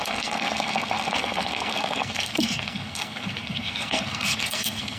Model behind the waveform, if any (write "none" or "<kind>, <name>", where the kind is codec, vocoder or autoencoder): codec, SNAC